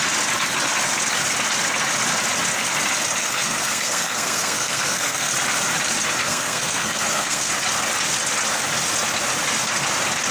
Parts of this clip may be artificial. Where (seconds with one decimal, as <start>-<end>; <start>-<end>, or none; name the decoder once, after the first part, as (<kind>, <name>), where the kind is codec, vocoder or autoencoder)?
3.2-5.3 (codec, SNAC); 6.2-7.5